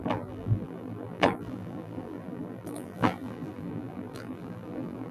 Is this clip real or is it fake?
fake